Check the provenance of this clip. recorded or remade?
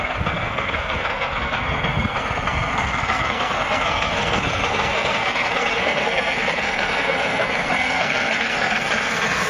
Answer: remade